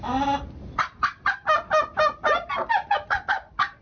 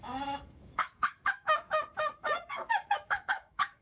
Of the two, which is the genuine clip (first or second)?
first